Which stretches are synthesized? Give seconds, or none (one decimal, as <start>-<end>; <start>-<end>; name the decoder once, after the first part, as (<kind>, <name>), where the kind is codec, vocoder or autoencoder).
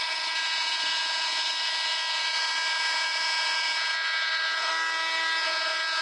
0.0-4.7 (vocoder, Vocos); 5.4-6.0